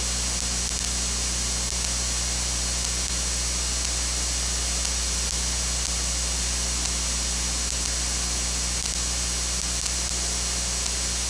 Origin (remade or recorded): recorded